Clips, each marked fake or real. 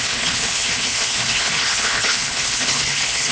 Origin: fake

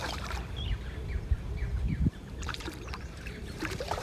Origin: fake